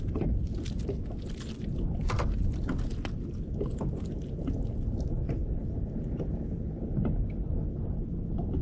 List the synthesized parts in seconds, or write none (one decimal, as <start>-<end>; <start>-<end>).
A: none